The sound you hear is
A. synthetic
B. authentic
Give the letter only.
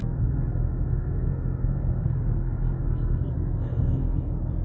A